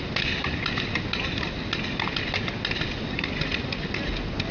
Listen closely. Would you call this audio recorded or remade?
recorded